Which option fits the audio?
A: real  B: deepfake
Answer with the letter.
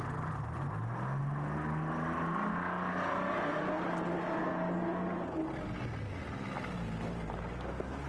A